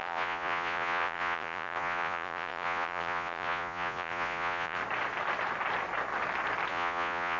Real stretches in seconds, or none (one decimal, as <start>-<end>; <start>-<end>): 4.8-6.7